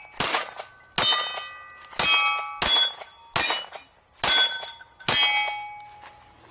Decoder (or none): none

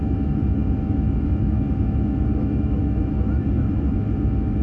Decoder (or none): autoencoder, DAC-VAE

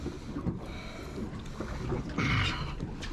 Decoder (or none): none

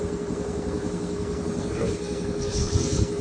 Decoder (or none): codec, SNAC